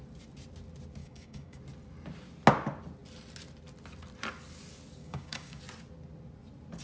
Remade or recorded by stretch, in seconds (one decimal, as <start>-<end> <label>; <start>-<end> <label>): 0.0-1.0 recorded; 1.0-1.6 remade; 1.6-5.0 recorded; 5.0-5.6 remade; 5.6-6.8 recorded